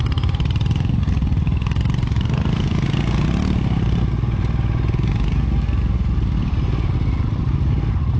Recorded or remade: recorded